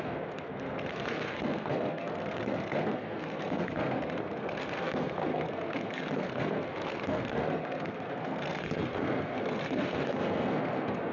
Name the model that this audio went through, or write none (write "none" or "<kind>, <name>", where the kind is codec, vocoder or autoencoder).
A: codec, SNAC